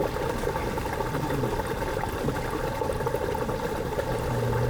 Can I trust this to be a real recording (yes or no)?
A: yes